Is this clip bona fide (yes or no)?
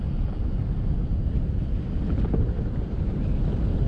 yes